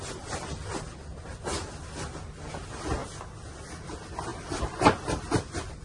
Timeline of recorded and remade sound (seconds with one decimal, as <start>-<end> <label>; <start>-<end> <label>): 0.0-1.6 remade; 1.6-2.2 recorded; 2.2-3.0 remade; 3.0-3.7 recorded; 3.7-5.8 remade

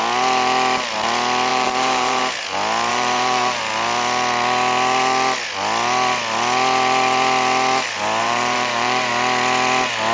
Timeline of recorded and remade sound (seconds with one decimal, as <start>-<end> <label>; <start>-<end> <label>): 0.0-1.5 recorded; 1.5-2.2 remade; 2.2-2.9 recorded; 2.9-3.6 remade; 3.6-8.2 recorded; 8.2-9.1 remade; 9.1-10.1 recorded

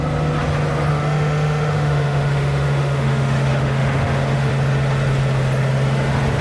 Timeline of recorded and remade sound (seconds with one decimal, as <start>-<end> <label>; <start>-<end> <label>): 0.0-0.9 recorded; 0.9-4.5 remade; 4.5-6.4 recorded